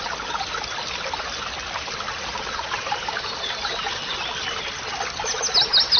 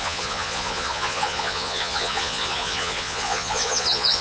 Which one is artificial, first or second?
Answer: second